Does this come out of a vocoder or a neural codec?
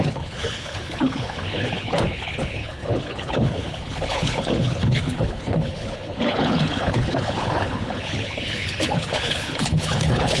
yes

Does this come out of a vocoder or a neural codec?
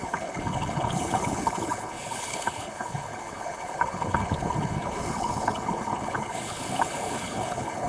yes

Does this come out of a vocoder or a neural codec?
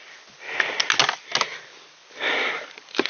no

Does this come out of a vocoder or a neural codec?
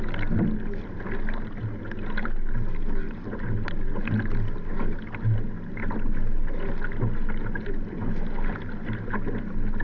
no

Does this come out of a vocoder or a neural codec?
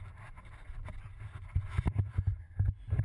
no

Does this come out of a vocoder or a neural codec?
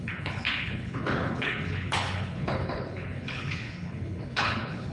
yes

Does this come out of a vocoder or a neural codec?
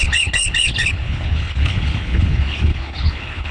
yes